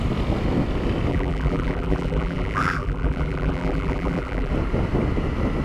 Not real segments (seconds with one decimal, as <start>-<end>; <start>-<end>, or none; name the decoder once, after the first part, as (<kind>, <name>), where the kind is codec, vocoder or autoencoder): 1.1-4.5 (vocoder, BigVGAN v2)